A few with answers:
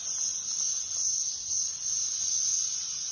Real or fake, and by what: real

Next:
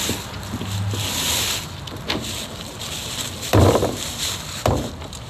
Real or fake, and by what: real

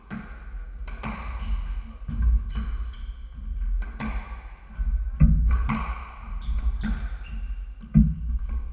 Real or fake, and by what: real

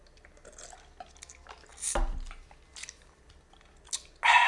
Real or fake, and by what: real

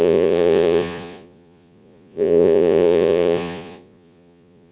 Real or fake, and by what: fake, vocoder, Vocos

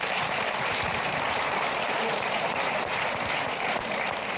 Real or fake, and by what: fake, vocoder, BigVGAN v2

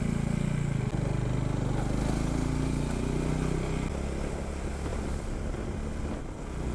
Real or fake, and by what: real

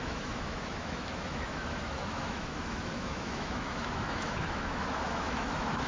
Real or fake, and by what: fake, autoencoder, DAC-VAE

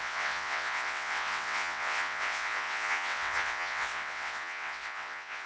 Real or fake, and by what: fake, vocoder, WaveNeXt